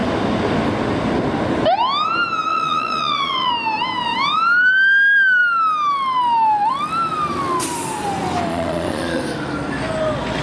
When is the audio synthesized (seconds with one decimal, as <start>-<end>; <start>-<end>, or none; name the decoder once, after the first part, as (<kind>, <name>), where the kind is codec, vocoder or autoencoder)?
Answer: 2.5-3.5 (vocoder, Vocos); 8.5-9.2